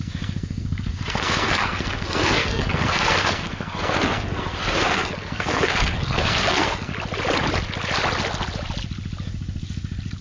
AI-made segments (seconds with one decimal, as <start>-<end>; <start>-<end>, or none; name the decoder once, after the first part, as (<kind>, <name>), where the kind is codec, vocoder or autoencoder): 0.0-6.9 (codec, SNAC)